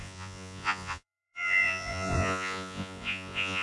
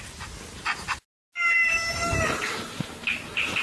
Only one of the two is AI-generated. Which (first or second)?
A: first